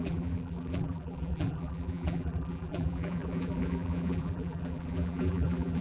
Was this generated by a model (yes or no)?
yes